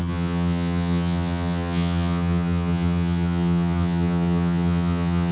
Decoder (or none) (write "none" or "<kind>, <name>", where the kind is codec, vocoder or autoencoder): vocoder, HiFi-GAN